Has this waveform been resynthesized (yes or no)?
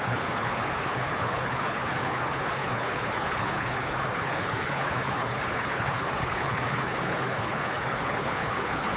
yes